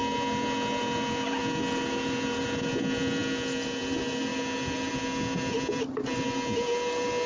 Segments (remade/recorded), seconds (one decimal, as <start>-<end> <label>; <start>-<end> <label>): 0.0-7.3 recorded

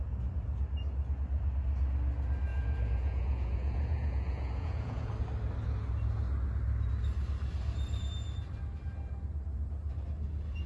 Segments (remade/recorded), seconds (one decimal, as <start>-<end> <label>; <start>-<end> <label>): 0.0-2.5 recorded; 2.5-5.1 remade; 5.1-10.7 recorded

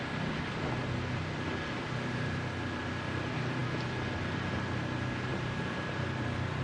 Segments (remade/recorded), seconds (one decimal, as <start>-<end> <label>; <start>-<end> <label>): 0.0-5.3 recorded; 5.3-6.6 remade

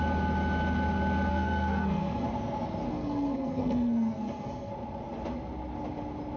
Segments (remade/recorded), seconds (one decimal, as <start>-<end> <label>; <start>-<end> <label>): 0.0-1.3 recorded; 1.3-2.3 remade; 2.3-2.9 recorded; 2.9-4.7 remade; 4.7-6.4 recorded

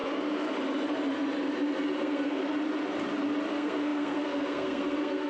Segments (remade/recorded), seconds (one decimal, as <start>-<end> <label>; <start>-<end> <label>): 0.0-2.0 recorded; 2.0-2.4 remade; 2.4-3.5 recorded; 3.5-5.3 remade

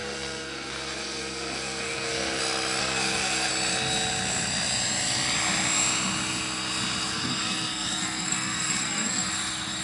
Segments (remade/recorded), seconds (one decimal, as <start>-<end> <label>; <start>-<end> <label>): 0.0-2.4 remade; 2.4-2.8 recorded; 2.8-3.5 remade; 3.5-7.1 recorded; 7.1-9.3 remade; 9.3-9.8 recorded